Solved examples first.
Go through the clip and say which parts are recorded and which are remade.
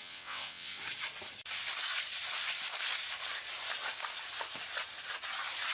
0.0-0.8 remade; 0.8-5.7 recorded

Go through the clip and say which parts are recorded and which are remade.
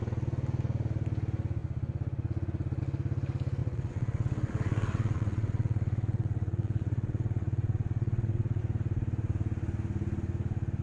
0.0-3.6 recorded; 3.6-8.6 remade; 8.6-10.8 recorded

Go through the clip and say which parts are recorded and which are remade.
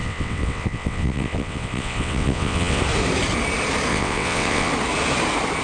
0.0-2.8 remade; 2.8-3.9 recorded; 3.9-4.7 remade; 4.7-5.6 recorded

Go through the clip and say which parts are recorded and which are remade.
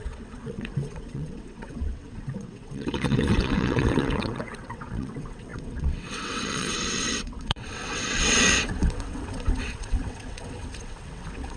0.0-11.6 remade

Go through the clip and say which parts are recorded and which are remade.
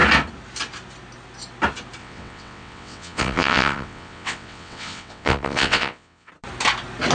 0.0-2.0 recorded; 2.0-6.3 remade; 6.3-7.1 recorded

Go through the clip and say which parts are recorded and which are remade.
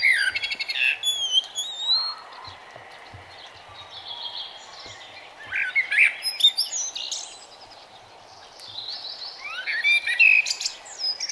0.0-11.3 recorded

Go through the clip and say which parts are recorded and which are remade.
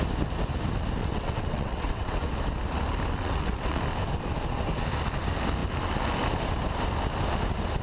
0.0-1.0 recorded; 1.0-2.3 remade; 2.3-3.2 recorded; 3.2-3.8 remade; 3.8-7.8 recorded